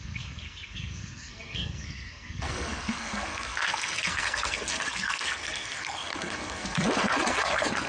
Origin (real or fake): fake